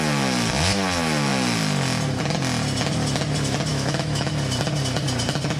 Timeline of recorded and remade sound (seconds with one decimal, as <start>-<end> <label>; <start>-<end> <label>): 0.0-3.7 recorded; 3.7-4.3 remade; 4.3-5.6 recorded